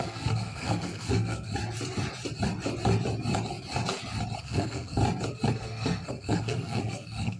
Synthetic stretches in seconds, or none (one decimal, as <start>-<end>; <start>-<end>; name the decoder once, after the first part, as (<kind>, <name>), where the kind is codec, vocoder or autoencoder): 0.0-1.5 (codec, SNAC); 4.4-5.0; 5.5-7.4